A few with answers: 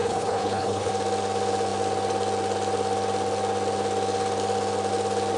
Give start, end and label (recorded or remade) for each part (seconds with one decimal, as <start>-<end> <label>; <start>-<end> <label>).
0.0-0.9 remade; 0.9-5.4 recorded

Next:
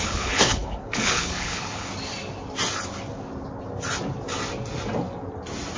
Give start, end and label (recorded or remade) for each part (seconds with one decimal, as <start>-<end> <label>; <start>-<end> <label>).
0.0-1.9 remade; 1.9-5.8 recorded

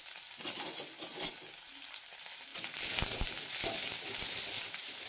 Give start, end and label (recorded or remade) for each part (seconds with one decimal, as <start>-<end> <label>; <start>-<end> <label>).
0.0-5.1 recorded